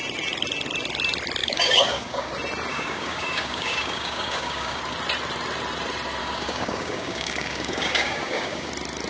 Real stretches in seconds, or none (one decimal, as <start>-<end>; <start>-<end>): 0.0-1.4; 2.3-2.7; 4.8-6.2; 8.7-9.1